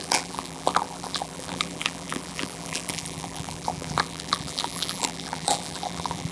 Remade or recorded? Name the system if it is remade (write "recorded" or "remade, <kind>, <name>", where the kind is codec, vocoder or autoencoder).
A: remade, vocoder, BigVGAN v2